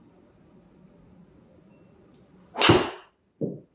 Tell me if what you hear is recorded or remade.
recorded